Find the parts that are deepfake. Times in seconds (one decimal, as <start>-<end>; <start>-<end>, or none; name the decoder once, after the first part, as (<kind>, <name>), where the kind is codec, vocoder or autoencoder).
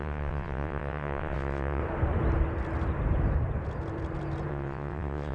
0.0-1.8 (vocoder, WaveNeXt); 4.5-5.3